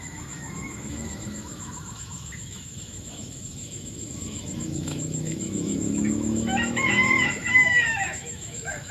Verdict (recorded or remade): remade